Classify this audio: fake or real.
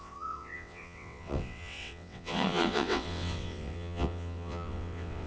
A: fake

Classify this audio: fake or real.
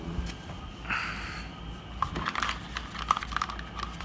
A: real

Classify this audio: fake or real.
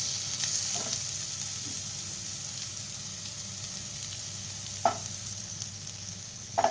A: real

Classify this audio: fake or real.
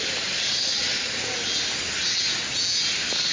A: real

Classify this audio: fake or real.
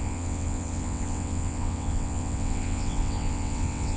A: fake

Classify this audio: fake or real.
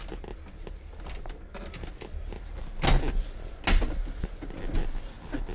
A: real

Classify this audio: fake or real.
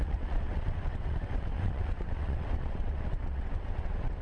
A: fake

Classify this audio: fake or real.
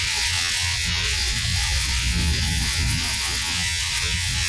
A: fake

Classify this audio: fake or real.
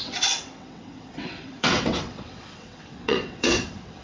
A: fake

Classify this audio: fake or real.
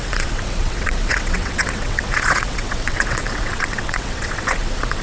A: fake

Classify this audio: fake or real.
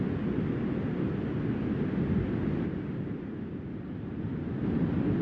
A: real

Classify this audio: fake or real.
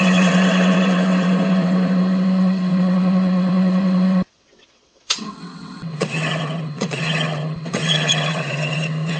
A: fake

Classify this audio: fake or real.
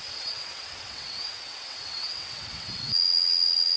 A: fake